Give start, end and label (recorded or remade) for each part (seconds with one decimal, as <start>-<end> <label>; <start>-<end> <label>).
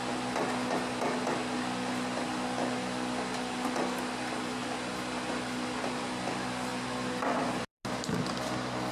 0.0-8.9 recorded